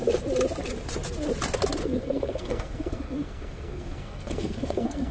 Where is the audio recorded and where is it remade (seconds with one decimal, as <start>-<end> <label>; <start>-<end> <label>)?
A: 0.0-1.8 recorded; 1.8-5.1 remade

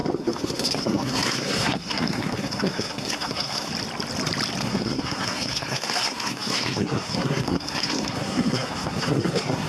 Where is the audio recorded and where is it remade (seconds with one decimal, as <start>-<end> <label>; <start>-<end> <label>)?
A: 0.0-3.7 remade; 3.7-4.6 recorded; 4.6-9.7 remade